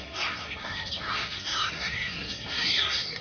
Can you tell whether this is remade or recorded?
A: remade